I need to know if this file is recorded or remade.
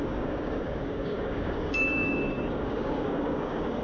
remade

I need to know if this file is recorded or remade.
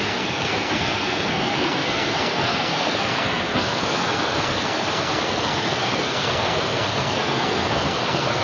remade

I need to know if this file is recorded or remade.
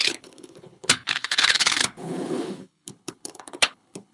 remade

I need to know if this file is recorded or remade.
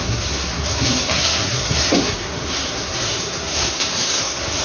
remade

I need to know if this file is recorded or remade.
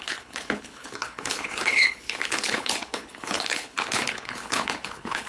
remade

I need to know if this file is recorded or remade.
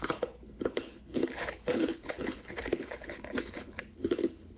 remade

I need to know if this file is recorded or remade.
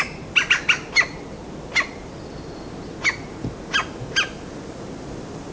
recorded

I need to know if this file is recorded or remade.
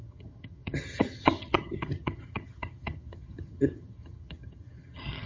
remade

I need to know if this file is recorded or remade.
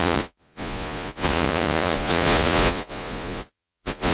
remade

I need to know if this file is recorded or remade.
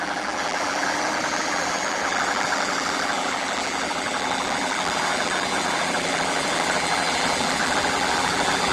remade